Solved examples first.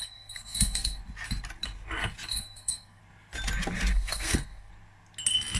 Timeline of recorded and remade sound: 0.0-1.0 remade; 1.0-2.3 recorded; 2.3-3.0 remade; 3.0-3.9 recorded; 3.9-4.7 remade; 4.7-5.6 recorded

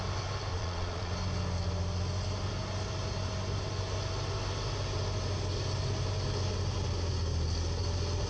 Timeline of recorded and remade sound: 0.0-0.5 recorded; 0.5-1.1 remade; 1.1-8.3 recorded

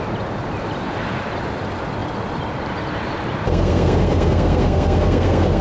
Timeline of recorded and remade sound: 0.0-3.5 recorded; 3.5-5.6 remade

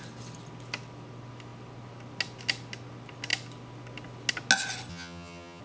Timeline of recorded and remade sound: 0.0-4.9 recorded; 4.9-5.6 remade